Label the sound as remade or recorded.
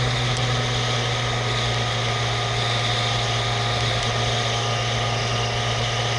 recorded